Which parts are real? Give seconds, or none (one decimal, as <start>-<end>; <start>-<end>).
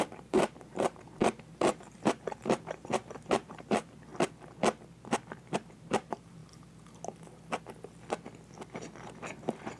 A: 4.1-5.7; 6.4-9.4